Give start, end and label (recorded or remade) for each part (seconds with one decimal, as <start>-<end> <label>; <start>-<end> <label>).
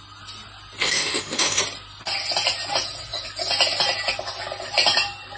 0.0-0.8 recorded; 0.8-1.6 remade; 1.6-5.4 recorded